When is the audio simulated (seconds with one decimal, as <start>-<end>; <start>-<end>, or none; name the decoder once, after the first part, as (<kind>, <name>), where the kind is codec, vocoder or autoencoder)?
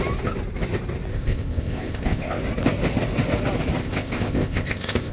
1.1-2.4 (codec, ZipCodec); 3.8-5.1